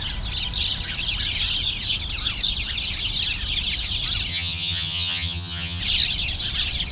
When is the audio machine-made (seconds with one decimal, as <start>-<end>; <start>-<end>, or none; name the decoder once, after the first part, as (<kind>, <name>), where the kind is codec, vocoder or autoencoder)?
4.3-5.8 (vocoder, HiFi-GAN)